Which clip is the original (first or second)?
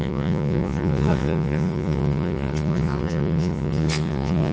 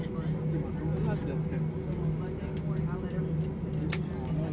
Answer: second